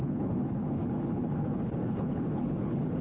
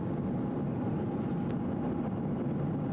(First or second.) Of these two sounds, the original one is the second